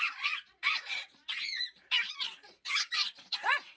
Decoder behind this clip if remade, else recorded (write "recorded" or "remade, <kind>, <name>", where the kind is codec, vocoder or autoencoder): remade, vocoder, Vocos